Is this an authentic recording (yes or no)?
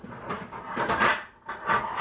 yes